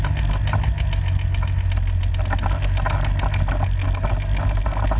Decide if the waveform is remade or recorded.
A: recorded